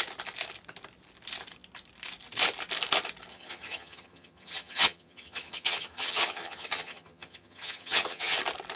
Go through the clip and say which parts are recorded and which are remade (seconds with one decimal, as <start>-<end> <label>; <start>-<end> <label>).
0.0-3.3 recorded; 3.3-8.4 remade; 8.4-8.8 recorded